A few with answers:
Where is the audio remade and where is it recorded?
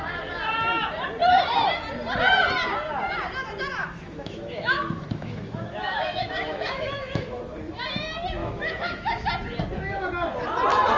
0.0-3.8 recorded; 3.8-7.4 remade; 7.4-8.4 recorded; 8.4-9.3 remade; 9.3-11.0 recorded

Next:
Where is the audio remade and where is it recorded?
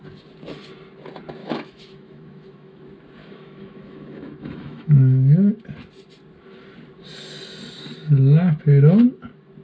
0.0-1.4 recorded; 1.4-2.8 remade; 2.8-3.2 recorded; 3.2-5.5 remade; 5.5-9.6 recorded